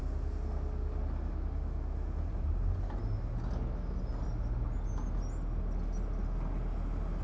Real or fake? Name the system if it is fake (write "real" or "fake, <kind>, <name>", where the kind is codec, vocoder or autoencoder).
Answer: real